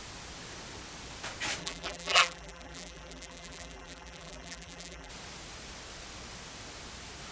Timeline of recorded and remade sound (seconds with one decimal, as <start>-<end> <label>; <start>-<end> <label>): 0.0-1.6 recorded; 1.6-5.1 remade; 5.1-7.3 recorded